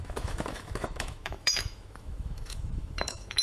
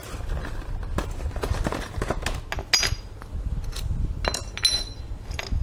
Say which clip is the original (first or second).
second